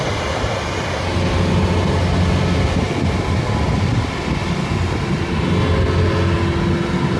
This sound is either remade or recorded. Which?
recorded